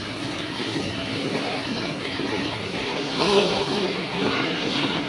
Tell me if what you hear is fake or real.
fake